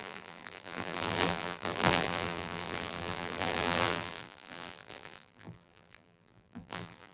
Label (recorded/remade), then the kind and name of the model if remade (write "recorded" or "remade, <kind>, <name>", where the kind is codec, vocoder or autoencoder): remade, vocoder, BigVGAN v2